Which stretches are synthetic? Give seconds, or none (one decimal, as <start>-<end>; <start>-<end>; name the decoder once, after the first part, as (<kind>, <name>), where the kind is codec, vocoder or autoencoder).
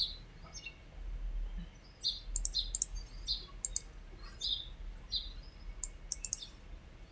none